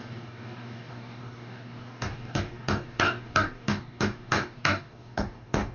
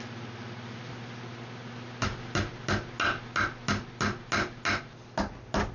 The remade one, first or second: first